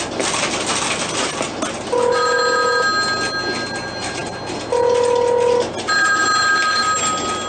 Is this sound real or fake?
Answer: real